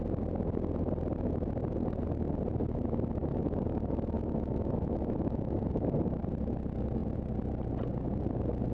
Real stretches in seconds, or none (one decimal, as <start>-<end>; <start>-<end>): 0.0-3.2; 6.2-8.7